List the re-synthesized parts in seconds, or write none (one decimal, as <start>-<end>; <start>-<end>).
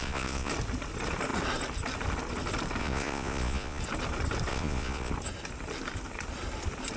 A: 0.0-0.5; 2.8-3.8; 4.5-5.1